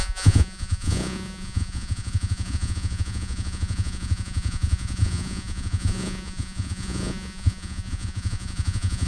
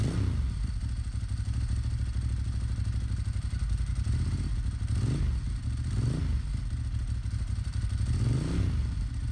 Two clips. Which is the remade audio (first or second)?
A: first